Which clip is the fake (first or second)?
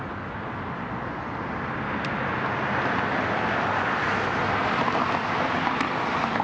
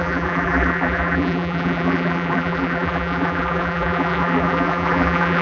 second